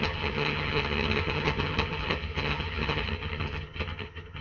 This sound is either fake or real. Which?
fake